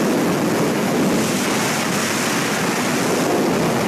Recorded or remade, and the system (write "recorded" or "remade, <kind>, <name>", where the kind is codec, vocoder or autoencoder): recorded